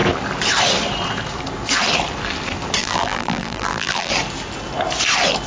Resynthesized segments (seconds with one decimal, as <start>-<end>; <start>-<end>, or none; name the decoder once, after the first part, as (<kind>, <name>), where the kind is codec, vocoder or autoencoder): 2.8-4.1 (vocoder, BigVGAN v2)